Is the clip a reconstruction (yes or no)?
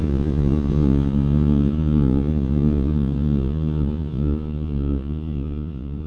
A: yes